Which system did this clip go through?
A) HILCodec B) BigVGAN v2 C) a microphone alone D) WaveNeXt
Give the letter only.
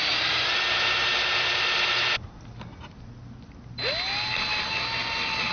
C